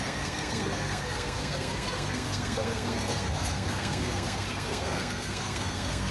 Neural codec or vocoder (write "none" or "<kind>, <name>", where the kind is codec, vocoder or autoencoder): codec, SNAC